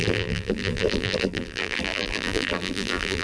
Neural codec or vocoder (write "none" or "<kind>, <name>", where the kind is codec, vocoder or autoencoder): vocoder, BigVGAN v2